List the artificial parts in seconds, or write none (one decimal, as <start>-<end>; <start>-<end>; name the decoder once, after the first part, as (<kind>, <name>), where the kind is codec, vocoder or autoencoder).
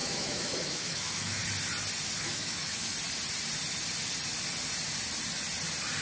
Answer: 0.0-1.4 (autoencoder, DAC-VAE); 2.2-2.9